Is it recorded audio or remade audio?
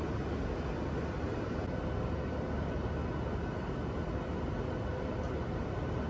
recorded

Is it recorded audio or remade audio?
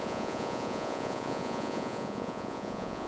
remade